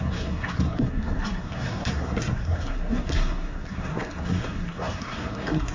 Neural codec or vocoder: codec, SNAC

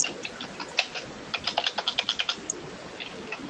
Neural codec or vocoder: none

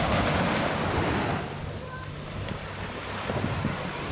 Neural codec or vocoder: none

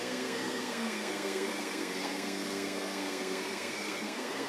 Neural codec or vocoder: codec, SNAC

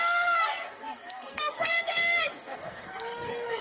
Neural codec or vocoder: codec, SNAC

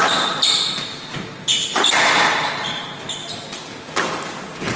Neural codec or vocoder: none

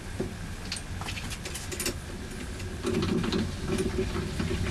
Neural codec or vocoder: none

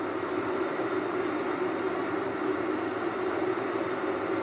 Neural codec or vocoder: none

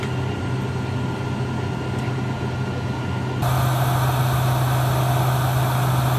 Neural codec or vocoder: none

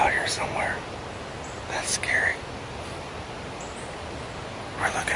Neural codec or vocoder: none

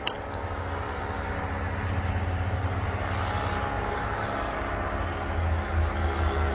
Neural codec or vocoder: none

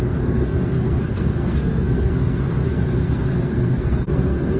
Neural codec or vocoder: codec, SNAC